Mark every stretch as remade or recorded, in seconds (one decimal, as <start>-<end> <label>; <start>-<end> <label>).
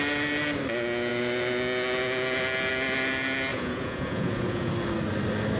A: 0.0-3.5 recorded; 3.5-4.7 remade; 4.7-5.6 recorded